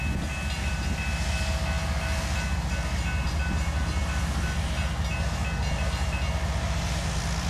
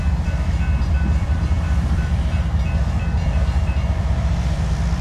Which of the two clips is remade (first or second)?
second